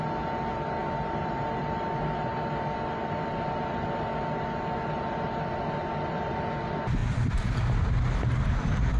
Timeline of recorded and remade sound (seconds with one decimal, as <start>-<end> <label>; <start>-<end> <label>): 0.0-9.0 recorded